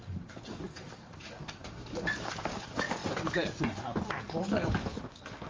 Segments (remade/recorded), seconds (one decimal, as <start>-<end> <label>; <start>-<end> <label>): 0.0-3.0 remade; 3.0-4.2 recorded; 4.2-5.5 remade